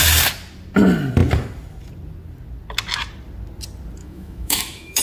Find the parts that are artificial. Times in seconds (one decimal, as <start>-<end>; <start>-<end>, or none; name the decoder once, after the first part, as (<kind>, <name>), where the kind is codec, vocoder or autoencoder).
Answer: 4.0-5.0 (autoencoder, DAC-VAE)